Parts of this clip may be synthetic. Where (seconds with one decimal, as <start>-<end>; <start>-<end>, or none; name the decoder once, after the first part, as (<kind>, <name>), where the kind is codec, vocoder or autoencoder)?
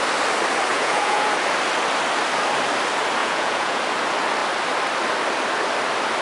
0.7-1.3 (vocoder, Vocos); 3.2-3.8